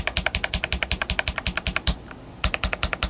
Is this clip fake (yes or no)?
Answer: no